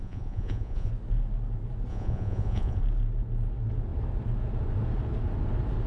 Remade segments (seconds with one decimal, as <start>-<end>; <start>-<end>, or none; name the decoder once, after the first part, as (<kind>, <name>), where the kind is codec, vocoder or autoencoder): 0.0-0.9 (vocoder, Vocos); 1.9-2.8